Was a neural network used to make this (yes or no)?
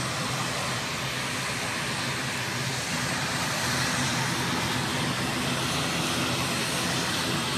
no